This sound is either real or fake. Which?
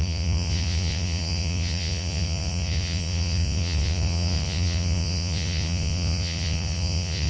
fake